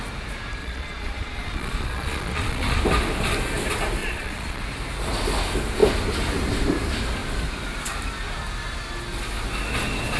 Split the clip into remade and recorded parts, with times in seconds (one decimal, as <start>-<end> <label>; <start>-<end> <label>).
0.0-0.6 recorded; 0.6-2.8 remade; 2.8-4.0 recorded; 4.0-4.6 remade; 4.6-10.2 recorded

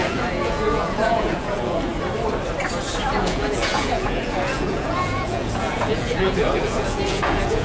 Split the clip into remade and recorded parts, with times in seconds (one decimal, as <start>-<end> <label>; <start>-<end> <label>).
0.0-1.9 remade; 1.9-3.1 recorded; 3.1-7.6 remade

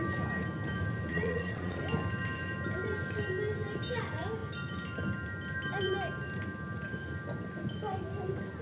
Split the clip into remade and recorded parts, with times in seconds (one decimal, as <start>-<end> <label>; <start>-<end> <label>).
0.0-1.1 recorded; 1.1-1.8 remade; 1.8-8.6 recorded